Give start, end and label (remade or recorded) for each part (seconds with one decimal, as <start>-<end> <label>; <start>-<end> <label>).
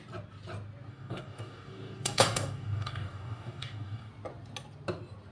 0.0-0.9 recorded; 0.9-4.1 remade; 4.1-5.3 recorded